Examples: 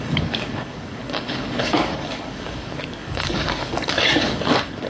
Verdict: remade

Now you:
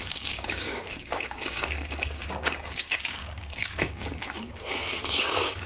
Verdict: remade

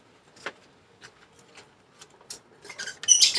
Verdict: recorded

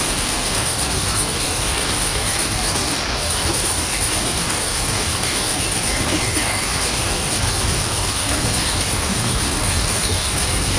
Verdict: remade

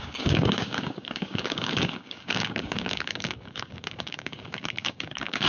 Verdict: remade